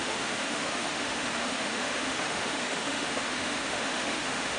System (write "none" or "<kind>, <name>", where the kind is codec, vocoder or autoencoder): autoencoder, DAC-VAE